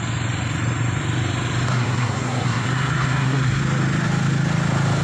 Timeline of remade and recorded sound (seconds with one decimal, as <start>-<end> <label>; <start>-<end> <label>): 0.0-1.7 recorded; 1.7-3.6 remade; 3.6-5.0 recorded